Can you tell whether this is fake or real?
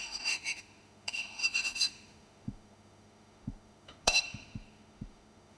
fake